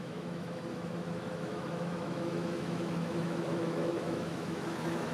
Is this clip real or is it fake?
fake